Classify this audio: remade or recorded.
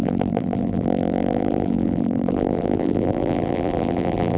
remade